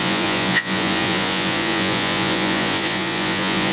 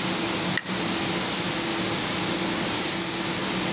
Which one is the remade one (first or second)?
first